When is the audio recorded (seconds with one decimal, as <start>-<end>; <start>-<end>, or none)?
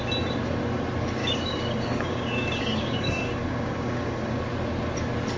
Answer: 0.0-1.2; 4.4-5.4